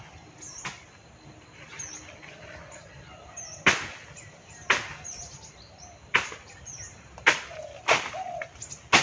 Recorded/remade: recorded